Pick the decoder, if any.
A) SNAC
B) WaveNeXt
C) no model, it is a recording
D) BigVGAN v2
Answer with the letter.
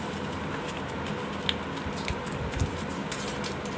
C